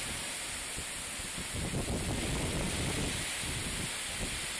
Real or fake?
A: real